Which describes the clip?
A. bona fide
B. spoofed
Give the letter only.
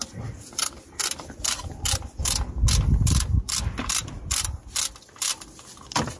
A